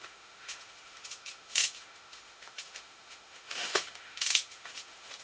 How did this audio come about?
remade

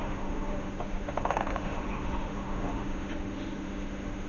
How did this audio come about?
remade